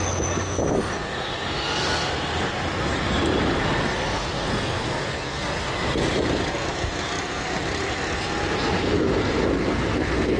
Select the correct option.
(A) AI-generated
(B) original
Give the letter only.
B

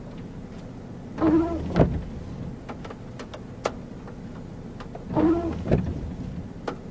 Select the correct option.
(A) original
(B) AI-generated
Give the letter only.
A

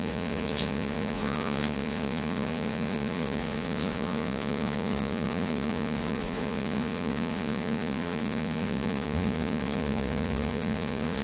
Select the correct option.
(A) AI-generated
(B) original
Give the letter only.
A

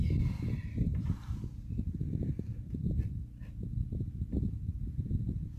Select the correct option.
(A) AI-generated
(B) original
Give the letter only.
B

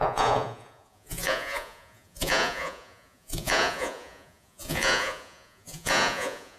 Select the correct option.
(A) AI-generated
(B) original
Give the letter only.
A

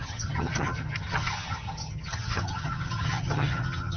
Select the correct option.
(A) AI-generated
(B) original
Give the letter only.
A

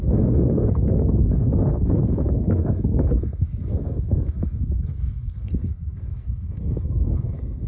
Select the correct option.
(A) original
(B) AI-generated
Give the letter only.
B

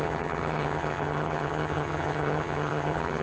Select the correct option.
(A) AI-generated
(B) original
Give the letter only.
A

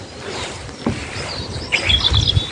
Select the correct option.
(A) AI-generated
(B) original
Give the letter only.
B